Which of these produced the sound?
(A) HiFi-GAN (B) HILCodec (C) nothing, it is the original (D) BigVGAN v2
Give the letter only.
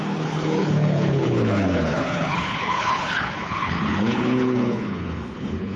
B